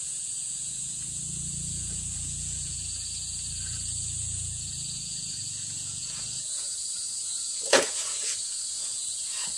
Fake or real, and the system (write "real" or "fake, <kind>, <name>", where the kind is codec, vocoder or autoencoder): fake, vocoder, Vocos